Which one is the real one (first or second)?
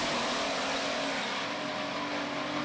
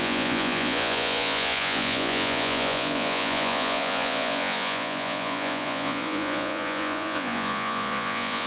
first